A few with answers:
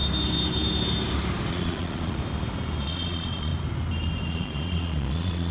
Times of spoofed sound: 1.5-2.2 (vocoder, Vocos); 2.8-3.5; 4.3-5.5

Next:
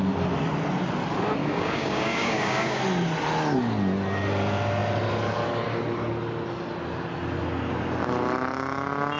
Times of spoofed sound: 1.4-2.8 (codec, DAC)

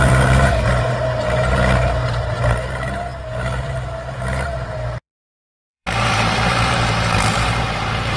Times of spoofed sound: 0.0-8.2 (vocoder, BigVGAN v2)

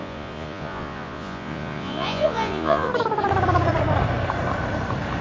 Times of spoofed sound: 0.0-2.9 (vocoder, Vocos)

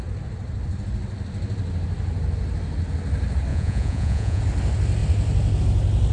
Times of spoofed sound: 3.5-4.4 (vocoder, Vocos)

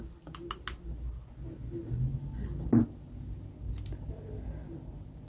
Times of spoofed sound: none

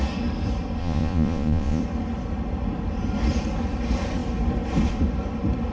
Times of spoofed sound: 0.8-1.8 (vocoder, Vocos)